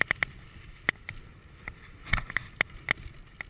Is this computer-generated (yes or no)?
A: no